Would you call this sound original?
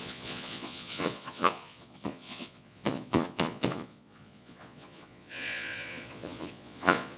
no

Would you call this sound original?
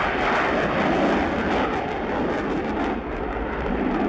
yes